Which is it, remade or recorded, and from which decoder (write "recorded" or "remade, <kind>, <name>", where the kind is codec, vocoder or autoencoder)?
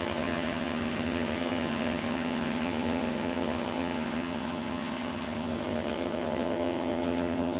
remade, vocoder, HiFi-GAN